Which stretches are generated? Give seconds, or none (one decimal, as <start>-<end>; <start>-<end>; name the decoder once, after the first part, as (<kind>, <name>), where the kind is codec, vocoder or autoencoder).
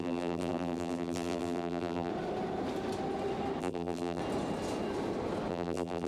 0.0-2.1 (vocoder, BigVGAN v2); 3.6-4.2; 5.5-6.1